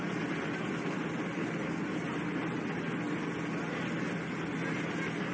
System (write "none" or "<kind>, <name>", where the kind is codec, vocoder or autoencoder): none